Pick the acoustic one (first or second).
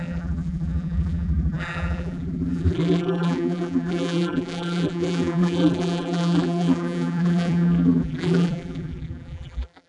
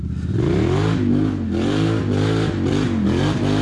second